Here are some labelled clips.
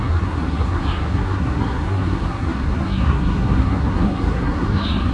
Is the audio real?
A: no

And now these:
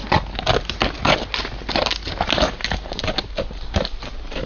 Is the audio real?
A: yes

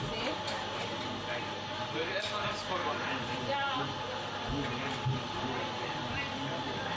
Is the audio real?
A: yes